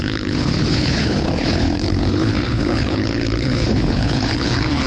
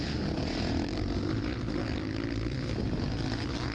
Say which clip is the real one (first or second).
second